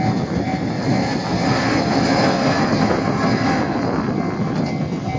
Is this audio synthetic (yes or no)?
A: no